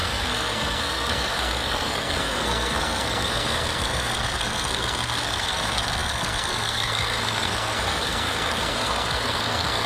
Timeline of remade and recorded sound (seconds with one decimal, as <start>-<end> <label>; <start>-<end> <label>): 0.0-9.9 remade